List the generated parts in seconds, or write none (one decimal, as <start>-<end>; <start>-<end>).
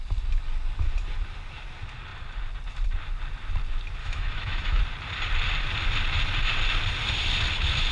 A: 4.0-4.8